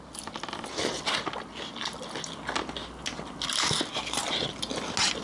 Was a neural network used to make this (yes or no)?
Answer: no